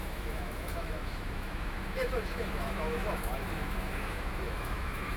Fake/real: fake